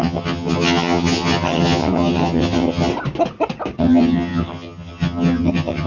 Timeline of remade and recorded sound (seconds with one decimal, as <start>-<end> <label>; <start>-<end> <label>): 0.0-2.9 remade; 2.9-3.8 recorded; 3.8-5.9 remade